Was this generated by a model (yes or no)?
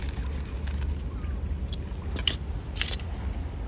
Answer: no